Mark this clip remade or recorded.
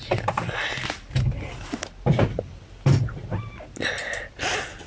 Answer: recorded